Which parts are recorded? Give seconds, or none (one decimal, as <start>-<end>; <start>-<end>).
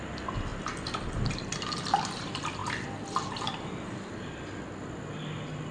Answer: 0.0-5.7